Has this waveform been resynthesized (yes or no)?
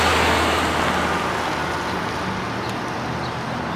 no